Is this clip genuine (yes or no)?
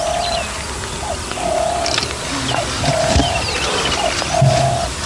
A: yes